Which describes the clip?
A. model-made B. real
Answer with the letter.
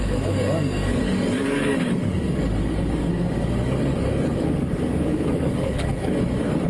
A